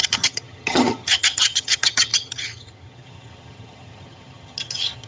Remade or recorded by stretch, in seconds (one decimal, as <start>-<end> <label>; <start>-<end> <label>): 0.0-5.1 remade